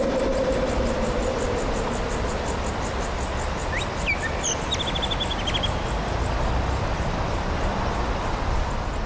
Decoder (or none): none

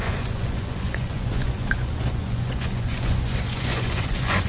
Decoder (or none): vocoder, Vocos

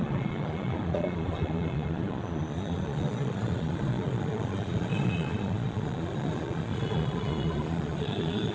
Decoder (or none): vocoder, Vocos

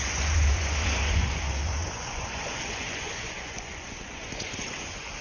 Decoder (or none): vocoder, Vocos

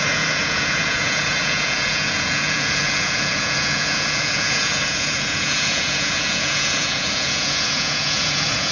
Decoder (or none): vocoder, Vocos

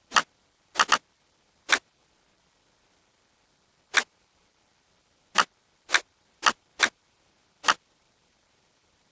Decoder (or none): none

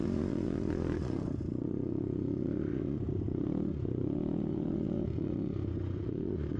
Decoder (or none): vocoder, Vocos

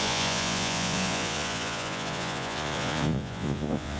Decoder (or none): vocoder, Vocos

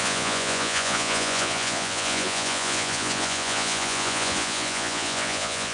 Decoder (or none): vocoder, Vocos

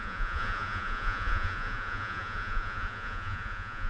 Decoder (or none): vocoder, Vocos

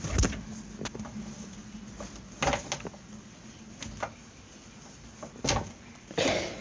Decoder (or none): none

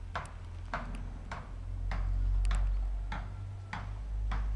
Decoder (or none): none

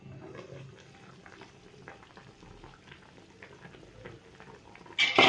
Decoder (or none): none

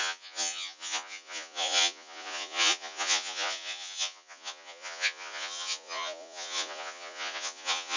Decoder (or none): vocoder, Vocos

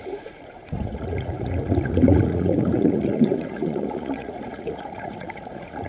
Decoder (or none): vocoder, Vocos